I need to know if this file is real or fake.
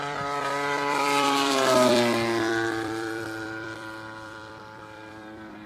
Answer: fake